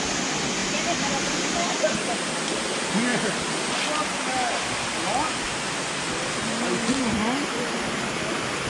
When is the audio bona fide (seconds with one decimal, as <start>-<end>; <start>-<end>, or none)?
0.0-8.7